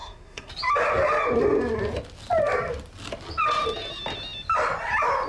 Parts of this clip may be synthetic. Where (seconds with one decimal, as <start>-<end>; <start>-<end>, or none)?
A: 0.0-0.5